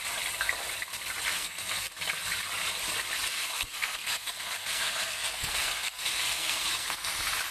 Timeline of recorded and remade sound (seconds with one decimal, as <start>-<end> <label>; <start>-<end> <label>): 0.0-1.3 recorded; 1.3-1.9 remade; 1.9-3.3 recorded; 3.3-7.1 remade; 7.1-7.5 recorded